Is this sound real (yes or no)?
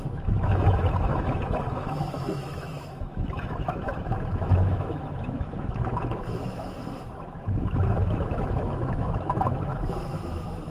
no